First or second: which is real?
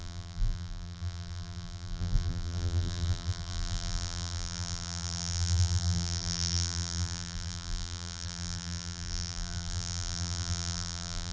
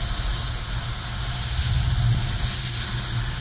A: second